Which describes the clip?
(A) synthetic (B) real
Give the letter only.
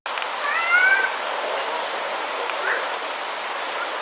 B